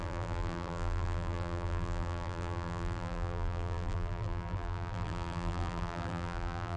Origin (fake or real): fake